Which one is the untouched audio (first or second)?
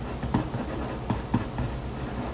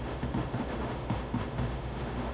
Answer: first